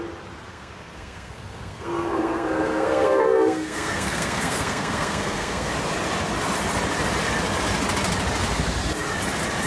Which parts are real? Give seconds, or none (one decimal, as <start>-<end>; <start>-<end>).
0.0-0.5; 5.7-9.7